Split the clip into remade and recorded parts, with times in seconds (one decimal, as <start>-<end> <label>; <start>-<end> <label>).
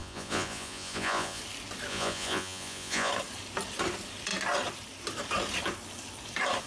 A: 0.0-1.4 remade; 1.4-1.9 recorded; 1.9-3.1 remade; 3.1-6.7 recorded